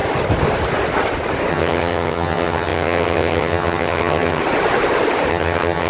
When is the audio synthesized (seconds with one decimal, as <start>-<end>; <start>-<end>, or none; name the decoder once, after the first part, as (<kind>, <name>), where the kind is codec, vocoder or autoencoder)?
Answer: 1.5-4.4 (vocoder, HiFi-GAN); 5.3-5.9